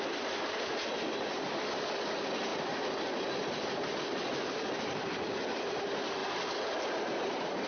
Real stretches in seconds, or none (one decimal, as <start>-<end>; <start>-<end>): 0.0-7.7